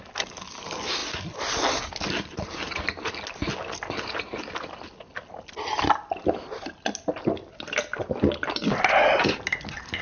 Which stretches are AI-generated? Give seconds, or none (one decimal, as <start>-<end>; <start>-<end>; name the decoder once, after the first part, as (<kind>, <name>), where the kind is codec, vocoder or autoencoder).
none